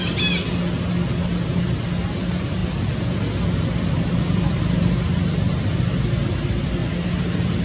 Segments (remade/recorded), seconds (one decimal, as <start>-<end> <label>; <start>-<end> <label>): 0.0-7.6 recorded